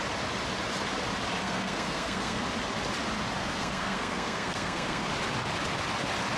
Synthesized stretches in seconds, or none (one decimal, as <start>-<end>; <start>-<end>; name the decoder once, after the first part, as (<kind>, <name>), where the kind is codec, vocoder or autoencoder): 1.4-2.4 (codec, SNAC); 3.4-5.1